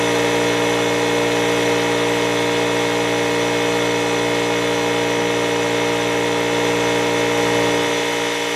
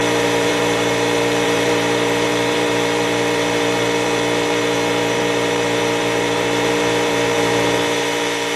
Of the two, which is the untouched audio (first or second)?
first